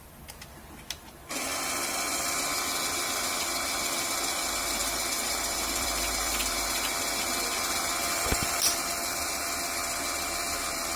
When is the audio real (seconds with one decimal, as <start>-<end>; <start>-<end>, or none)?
0.0-4.8; 6.9-8.0; 9.5-11.0